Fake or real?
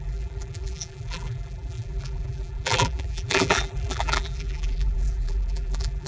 fake